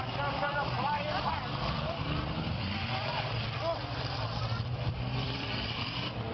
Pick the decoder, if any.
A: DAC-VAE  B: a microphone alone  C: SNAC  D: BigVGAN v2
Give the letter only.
D